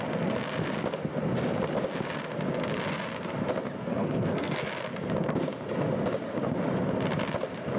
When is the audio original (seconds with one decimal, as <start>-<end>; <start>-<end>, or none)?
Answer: 0.0-3.8; 4.7-7.8